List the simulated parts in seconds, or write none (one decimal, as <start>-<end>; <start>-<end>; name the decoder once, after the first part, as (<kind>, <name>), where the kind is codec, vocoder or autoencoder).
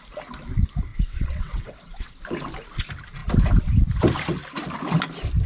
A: 0.9-2.2 (vocoder, WaveNeXt)